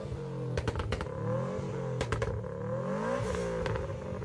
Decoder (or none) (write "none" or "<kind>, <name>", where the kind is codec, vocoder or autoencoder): none